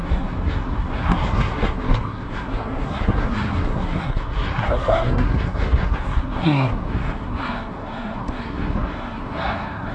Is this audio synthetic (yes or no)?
yes